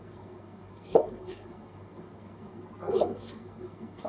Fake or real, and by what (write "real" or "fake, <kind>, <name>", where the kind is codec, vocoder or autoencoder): fake, codec, SNAC